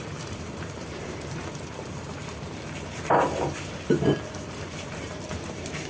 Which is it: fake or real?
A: fake